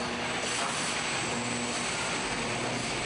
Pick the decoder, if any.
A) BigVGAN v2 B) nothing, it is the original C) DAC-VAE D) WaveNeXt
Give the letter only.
B